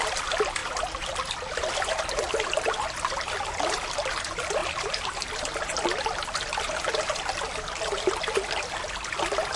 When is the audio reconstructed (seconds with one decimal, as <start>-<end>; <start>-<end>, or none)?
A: none